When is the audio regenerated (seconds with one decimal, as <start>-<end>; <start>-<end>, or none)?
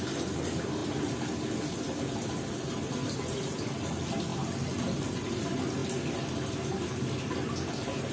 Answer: none